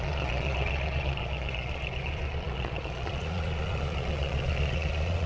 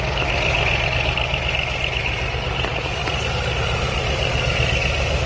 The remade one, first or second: first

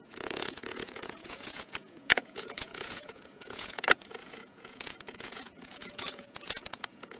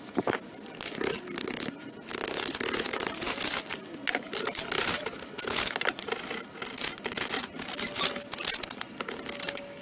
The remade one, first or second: first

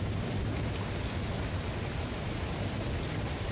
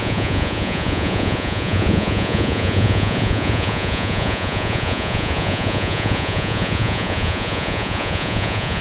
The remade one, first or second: second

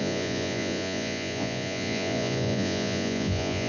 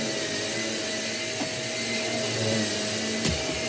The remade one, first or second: first